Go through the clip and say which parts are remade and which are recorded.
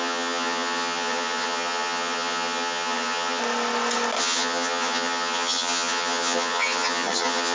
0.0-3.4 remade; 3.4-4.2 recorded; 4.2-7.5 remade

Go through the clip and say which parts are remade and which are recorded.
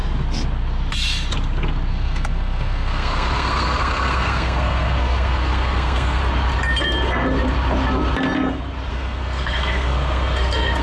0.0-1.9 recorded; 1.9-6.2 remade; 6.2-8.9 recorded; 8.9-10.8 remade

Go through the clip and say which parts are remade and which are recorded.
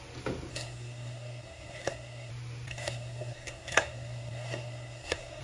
0.0-0.5 recorded; 0.5-2.3 remade; 2.3-2.7 recorded; 2.7-5.4 remade